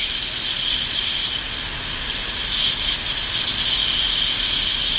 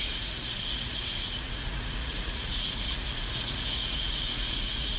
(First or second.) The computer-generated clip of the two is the second